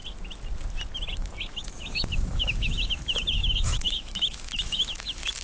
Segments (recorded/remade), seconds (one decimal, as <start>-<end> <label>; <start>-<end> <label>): 0.0-1.1 recorded; 1.1-5.4 remade

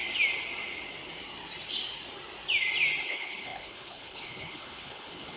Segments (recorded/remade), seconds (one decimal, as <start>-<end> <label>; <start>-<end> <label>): 0.0-3.1 recorded; 3.1-5.4 remade

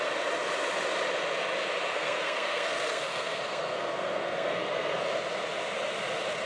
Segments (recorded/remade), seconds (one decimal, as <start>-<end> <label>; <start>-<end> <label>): 0.0-1.9 recorded; 1.9-5.0 remade; 5.0-6.5 recorded

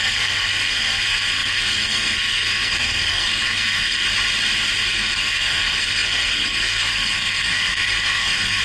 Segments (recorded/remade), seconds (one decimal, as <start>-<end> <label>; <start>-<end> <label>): 0.0-4.1 remade; 4.1-4.9 recorded; 4.9-8.6 remade